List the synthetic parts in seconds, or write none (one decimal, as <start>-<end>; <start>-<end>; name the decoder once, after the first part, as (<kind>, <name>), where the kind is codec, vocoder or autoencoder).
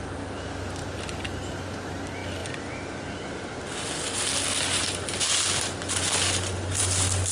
none